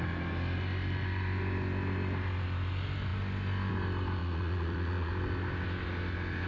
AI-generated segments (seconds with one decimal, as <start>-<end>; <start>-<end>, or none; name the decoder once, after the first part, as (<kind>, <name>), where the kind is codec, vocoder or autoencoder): 4.2-5.1 (vocoder, Vocos)